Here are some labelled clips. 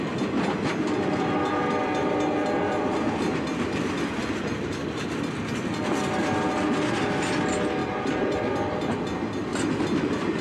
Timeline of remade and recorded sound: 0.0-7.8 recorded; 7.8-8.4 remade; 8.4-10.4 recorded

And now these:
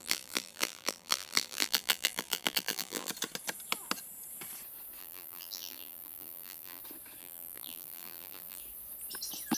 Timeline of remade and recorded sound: 0.0-3.1 remade; 3.1-5.0 recorded; 5.0-6.8 remade; 6.8-7.2 recorded; 7.2-8.6 remade; 8.6-9.6 recorded

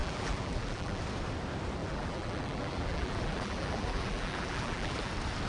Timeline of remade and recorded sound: 0.0-1.0 remade; 1.0-1.8 recorded; 1.8-5.1 remade; 5.1-5.5 recorded

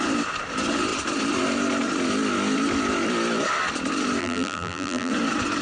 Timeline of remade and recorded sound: 0.0-4.2 recorded; 4.2-5.1 remade; 5.1-5.6 recorded

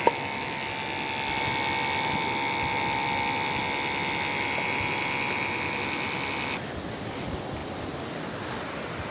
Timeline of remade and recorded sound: 0.0-9.1 recorded